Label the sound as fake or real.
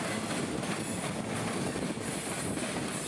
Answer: real